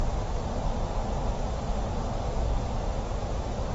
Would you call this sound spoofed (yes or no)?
no